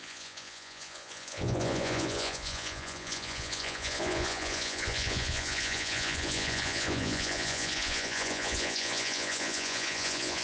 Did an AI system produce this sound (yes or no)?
yes